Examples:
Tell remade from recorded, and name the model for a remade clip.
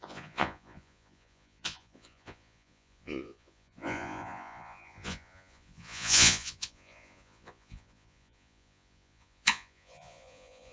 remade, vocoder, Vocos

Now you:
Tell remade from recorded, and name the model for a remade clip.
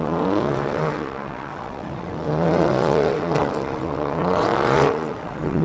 remade, vocoder, WaveNeXt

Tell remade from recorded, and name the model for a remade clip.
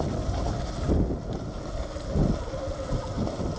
recorded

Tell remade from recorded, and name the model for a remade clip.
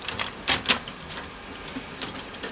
remade, vocoder, BigVGAN v2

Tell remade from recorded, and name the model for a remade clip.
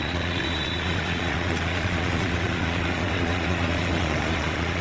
remade, vocoder, Vocos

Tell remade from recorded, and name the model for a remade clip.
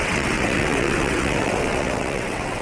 remade, vocoder, WaveNeXt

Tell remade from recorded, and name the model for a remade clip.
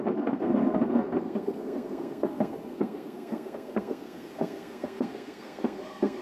remade, codec, SNAC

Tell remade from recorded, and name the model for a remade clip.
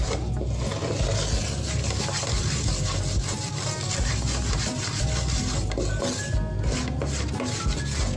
recorded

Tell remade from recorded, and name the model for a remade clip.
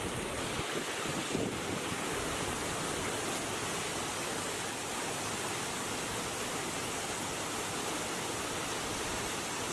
recorded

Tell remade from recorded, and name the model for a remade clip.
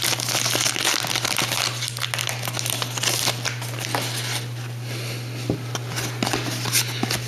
recorded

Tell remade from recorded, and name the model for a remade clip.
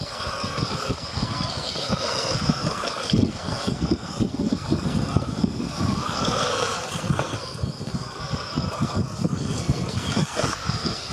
remade, codec, SNAC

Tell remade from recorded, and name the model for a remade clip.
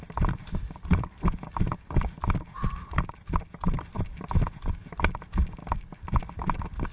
recorded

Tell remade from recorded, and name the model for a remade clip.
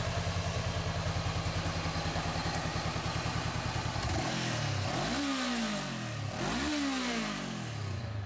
recorded